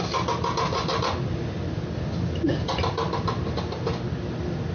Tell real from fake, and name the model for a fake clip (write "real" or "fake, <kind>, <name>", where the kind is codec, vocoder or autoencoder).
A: real